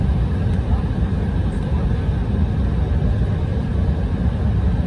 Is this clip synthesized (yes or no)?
no